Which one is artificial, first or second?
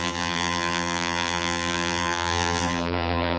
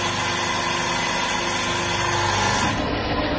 first